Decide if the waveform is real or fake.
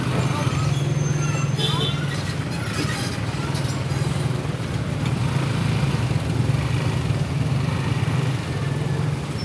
real